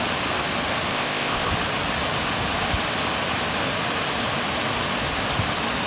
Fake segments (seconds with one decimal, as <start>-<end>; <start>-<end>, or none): 0.9-1.5